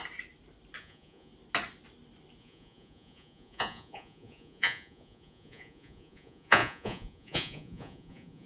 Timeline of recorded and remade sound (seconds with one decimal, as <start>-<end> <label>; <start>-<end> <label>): 0.0-0.8 recorded; 0.8-1.3 remade; 1.3-2.4 recorded; 2.4-8.5 remade